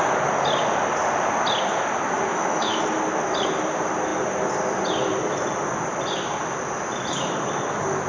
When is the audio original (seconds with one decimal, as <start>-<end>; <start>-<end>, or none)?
0.0-2.3; 2.8-8.1